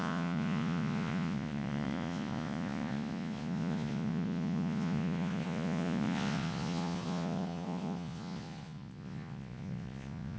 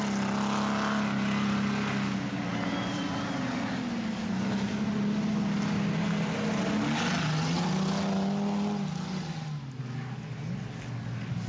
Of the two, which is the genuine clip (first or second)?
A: second